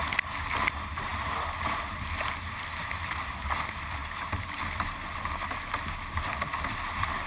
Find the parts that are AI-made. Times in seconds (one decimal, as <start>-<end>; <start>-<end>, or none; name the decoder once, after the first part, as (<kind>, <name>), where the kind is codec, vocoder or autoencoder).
none